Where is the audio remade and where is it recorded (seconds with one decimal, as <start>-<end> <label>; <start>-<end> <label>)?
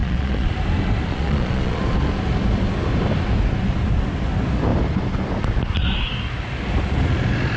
0.0-0.5 remade; 0.5-1.1 recorded; 1.1-1.8 remade; 1.8-7.6 recorded